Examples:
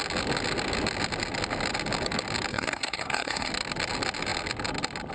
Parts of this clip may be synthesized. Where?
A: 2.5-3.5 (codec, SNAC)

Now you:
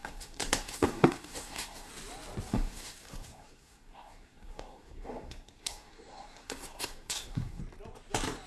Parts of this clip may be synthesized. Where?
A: 0.0-1.9 (codec, SNAC); 2.5-7.6

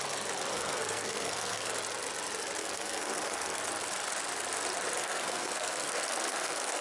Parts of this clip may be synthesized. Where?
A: 0.5-1.7 (codec, SNAC); 2.6-3.6; 5.0-6.8

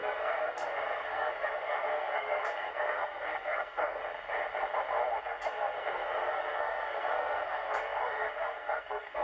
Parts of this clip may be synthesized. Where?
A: 0.0-4.0 (codec, SNAC); 5.2-9.2

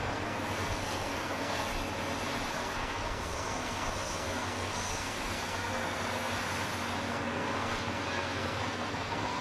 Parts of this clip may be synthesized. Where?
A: 0.0-1.7 (codec, SNAC); 2.5-6.3; 7.1-9.4

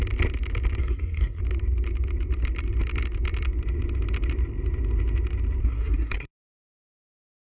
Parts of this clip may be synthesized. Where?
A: 0.8-1.4 (codec, SNAC); 5.6-6.3

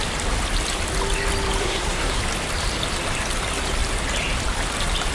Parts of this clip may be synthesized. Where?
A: 1.6-2.2 (codec, SNAC)

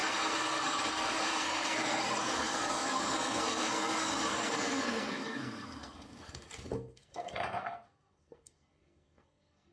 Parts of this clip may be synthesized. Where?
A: 0.0-9.7 (codec, SNAC)